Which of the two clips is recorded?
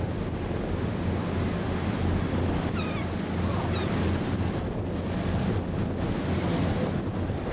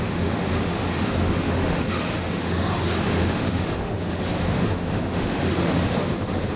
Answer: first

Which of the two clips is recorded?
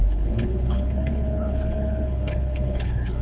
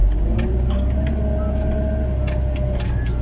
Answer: second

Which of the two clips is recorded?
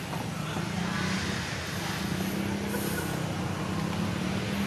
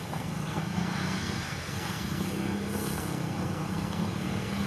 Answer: first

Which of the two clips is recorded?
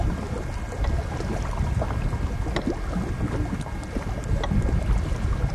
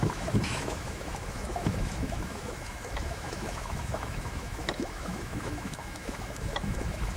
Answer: first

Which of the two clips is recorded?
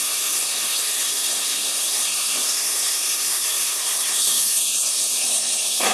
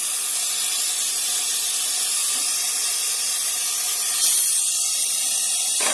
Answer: second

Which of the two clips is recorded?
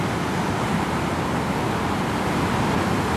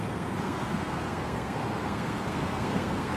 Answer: first